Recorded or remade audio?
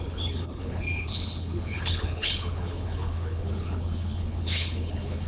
remade